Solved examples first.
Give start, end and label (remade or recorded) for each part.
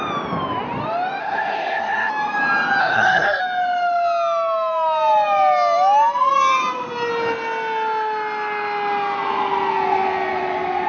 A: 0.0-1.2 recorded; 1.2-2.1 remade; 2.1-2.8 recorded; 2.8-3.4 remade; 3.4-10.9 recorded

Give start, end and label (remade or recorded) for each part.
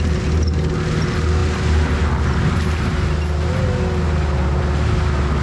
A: 0.0-5.4 recorded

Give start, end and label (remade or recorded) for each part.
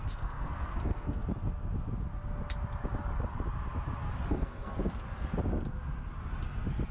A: 0.0-1.2 remade; 1.2-4.3 recorded; 4.3-4.7 remade; 4.7-6.9 recorded